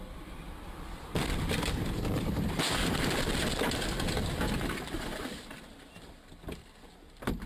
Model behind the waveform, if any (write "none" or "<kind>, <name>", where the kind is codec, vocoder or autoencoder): vocoder, BigVGAN v2